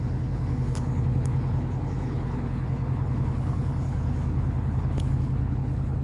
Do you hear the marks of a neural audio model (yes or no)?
yes